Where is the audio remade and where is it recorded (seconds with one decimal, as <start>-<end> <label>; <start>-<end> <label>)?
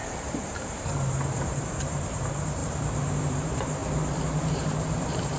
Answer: 0.0-0.8 recorded; 0.8-3.8 remade; 3.8-4.5 recorded; 4.5-5.4 remade